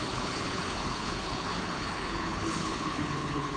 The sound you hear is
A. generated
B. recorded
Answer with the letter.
A